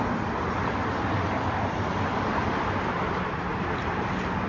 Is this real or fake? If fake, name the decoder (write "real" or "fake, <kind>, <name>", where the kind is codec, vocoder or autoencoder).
real